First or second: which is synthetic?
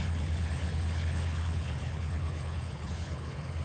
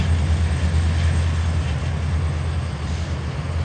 first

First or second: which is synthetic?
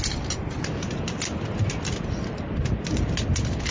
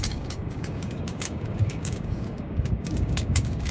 second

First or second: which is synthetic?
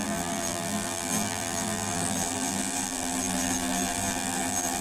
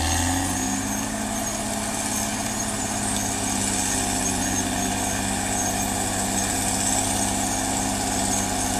first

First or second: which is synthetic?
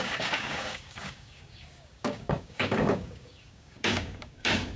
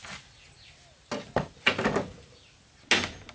first